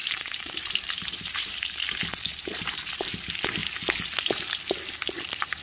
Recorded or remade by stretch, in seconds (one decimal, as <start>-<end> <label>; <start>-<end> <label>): 0.0-1.6 remade; 1.6-2.3 recorded; 2.3-2.9 remade; 2.9-5.6 recorded